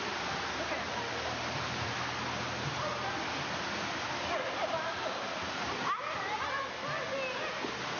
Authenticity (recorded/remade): recorded